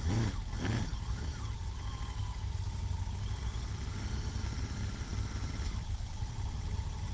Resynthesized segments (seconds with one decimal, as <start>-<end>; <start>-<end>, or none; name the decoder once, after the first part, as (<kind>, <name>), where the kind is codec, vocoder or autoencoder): 0.9-1.9 (vocoder, BigVGAN v2); 5.1-6.3